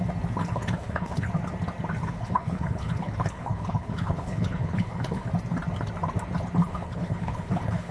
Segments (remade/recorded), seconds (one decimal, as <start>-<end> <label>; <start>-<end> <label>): 0.0-0.4 recorded; 0.4-1.3 remade; 1.3-2.0 recorded; 2.0-5.3 remade; 5.3-6.6 recorded; 6.6-7.9 remade